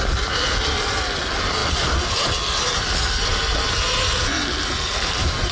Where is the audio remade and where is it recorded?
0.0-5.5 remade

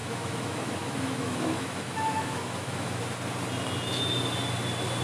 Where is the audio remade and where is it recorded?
0.0-3.0 remade; 3.0-5.0 recorded

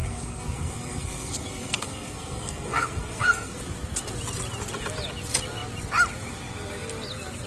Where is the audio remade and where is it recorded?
0.0-3.6 remade; 3.6-7.5 recorded